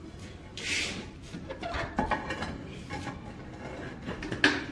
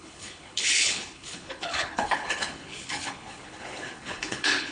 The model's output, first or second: second